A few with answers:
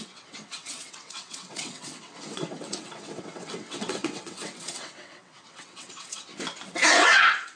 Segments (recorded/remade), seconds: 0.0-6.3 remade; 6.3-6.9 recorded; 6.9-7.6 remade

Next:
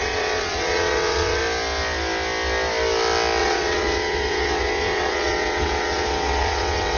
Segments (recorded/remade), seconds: 0.0-1.4 remade; 1.4-3.4 recorded; 3.4-7.0 remade

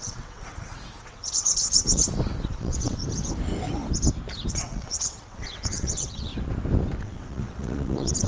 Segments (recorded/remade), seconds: 0.0-2.0 remade; 2.0-2.5 recorded; 2.5-3.0 remade; 3.0-4.5 recorded; 4.5-6.3 remade; 6.3-7.0 recorded; 7.0-8.3 remade

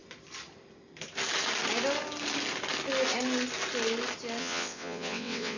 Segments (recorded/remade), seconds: 0.0-4.4 recorded; 4.4-5.6 remade

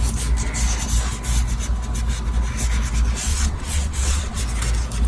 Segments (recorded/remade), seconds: 0.0-3.3 recorded; 3.3-4.4 remade; 4.4-5.1 recorded

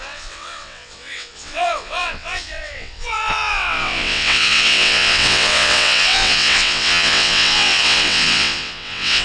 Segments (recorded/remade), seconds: 0.0-9.2 remade

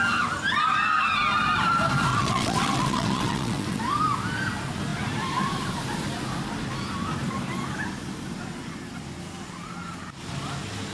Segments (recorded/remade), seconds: 0.0-2.1 recorded; 2.1-3.8 remade; 3.8-10.9 recorded

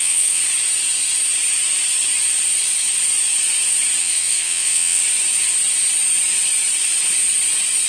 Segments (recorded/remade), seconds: 0.0-0.4 remade; 0.4-4.0 recorded; 4.0-5.0 remade; 5.0-7.9 recorded